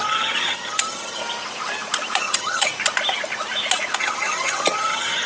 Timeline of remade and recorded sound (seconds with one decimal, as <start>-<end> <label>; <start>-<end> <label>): 0.0-1.2 remade; 1.2-2.2 recorded; 2.2-2.7 remade; 2.7-4.0 recorded; 4.0-5.3 remade